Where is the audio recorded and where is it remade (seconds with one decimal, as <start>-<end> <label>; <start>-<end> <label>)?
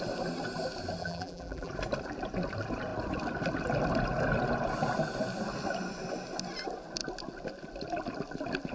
0.0-1.0 recorded; 1.0-1.7 remade; 1.7-8.7 recorded